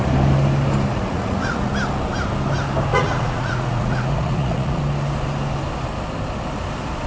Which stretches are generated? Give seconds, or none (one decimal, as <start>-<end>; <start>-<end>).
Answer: 0.9-1.7; 2.9-4.8